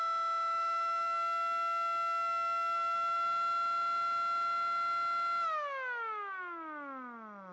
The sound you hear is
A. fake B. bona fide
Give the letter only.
B